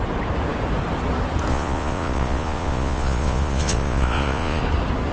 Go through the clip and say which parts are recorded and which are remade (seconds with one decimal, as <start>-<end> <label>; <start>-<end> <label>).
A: 0.0-1.5 recorded; 1.5-4.6 remade; 4.6-5.1 recorded